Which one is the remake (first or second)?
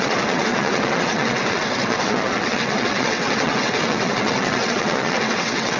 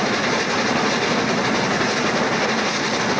first